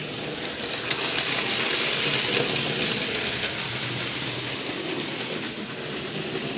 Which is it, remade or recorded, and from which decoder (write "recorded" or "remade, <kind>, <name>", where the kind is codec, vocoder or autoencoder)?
recorded